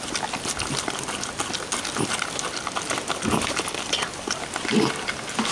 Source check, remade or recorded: recorded